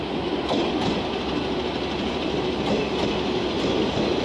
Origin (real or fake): real